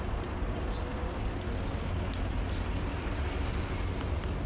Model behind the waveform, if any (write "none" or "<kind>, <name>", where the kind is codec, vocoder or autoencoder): none